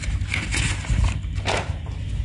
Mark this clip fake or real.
real